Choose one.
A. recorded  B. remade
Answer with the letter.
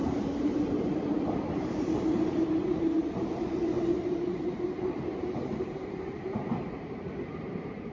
B